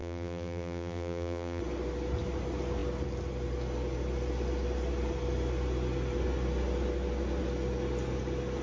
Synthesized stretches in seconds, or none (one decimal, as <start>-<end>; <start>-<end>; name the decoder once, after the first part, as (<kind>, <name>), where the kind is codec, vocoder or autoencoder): 0.0-1.6 (vocoder, BigVGAN v2)